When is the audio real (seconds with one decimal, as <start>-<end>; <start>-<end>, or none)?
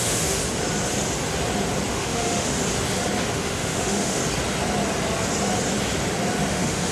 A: 0.4-1.9; 2.6-3.2; 4.2-6.5